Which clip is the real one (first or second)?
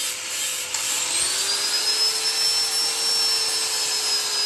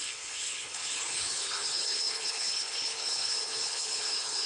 first